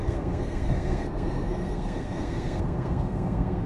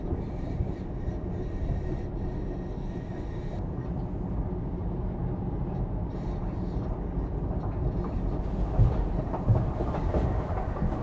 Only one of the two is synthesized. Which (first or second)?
first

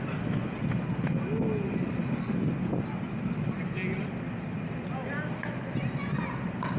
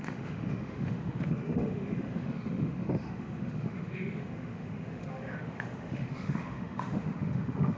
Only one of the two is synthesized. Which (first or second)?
second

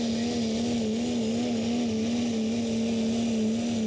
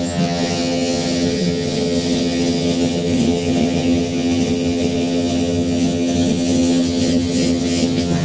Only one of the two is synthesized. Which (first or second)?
second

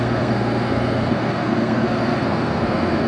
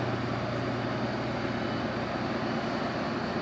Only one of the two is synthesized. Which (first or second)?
first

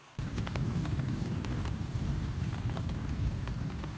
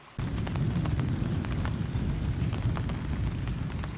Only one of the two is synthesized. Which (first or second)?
first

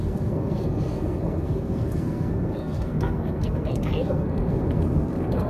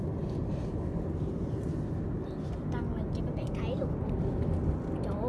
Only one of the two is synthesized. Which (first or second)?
first